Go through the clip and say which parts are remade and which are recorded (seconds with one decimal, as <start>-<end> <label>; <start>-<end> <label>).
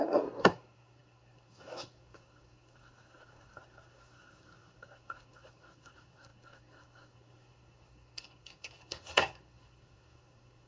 0.0-10.7 remade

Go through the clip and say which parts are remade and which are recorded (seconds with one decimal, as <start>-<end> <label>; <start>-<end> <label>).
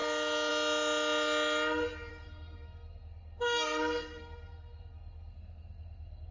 0.0-2.1 recorded; 2.1-6.3 remade